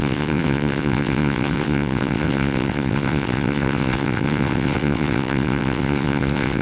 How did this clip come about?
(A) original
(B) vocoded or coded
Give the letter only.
B